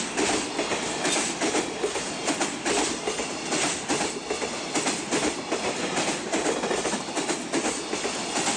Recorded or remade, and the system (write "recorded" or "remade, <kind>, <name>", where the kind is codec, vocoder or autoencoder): recorded